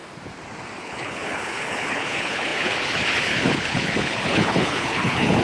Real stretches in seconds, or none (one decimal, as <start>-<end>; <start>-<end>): 0.0-0.8